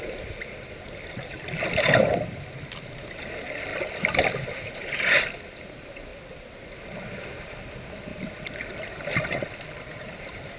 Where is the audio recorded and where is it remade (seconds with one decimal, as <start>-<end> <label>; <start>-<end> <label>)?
0.0-10.6 recorded